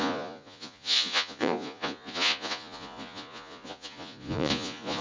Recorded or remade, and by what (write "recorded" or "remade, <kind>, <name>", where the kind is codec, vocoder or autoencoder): remade, vocoder, Vocos